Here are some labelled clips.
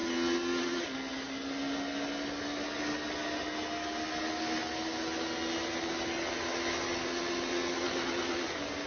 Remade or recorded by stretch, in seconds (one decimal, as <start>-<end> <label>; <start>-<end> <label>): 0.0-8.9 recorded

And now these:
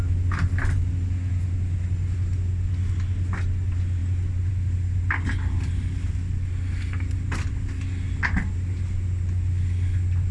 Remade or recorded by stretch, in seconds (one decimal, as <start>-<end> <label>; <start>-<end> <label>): 0.0-10.3 recorded

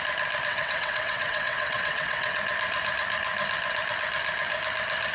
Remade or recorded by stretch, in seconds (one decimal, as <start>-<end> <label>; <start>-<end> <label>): 0.0-0.5 recorded; 0.5-2.4 remade; 2.4-5.1 recorded

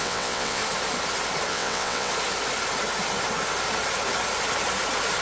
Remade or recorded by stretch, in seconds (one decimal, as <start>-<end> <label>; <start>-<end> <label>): 0.0-0.6 remade; 0.6-1.5 recorded; 1.5-2.1 remade; 2.1-5.2 recorded